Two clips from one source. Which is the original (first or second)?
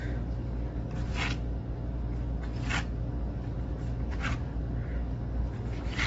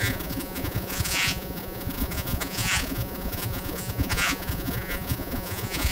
first